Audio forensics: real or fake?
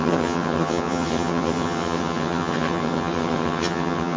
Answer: fake